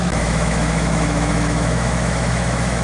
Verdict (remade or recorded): remade